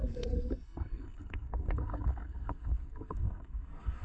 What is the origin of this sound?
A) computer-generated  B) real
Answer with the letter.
A